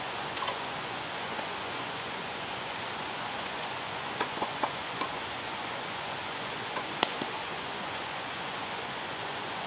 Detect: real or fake fake